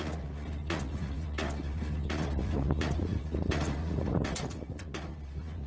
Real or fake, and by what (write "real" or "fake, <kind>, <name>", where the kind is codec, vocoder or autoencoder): fake, vocoder, Vocos